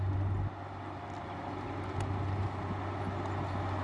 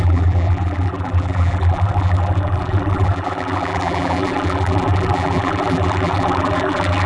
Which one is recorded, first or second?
first